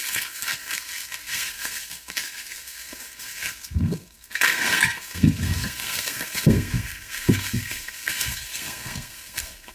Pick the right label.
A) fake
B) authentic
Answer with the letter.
A